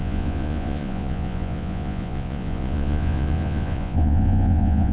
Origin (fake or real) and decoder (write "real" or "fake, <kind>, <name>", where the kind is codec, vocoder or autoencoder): fake, vocoder, Vocos